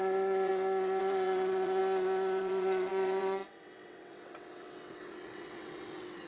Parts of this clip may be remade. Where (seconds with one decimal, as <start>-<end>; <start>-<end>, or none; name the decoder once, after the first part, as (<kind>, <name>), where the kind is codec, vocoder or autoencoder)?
0.0-0.5 (vocoder, WaveNeXt); 1.0-1.8; 2.4-6.3